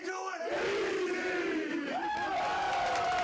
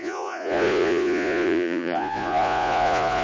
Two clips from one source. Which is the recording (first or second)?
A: first